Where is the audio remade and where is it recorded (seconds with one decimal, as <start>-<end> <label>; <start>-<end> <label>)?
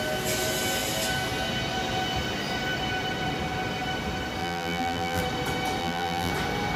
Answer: 0.0-4.4 recorded; 4.4-5.2 remade; 5.2-5.8 recorded; 5.8-6.3 remade; 6.3-6.8 recorded